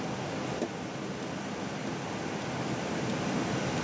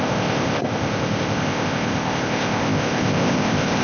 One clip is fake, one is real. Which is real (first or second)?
first